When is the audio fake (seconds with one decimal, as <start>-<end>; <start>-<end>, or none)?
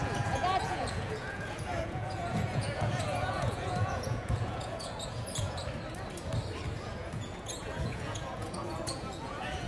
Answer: 0.0-5.6; 6.8-9.7